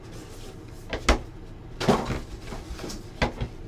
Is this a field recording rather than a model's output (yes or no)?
yes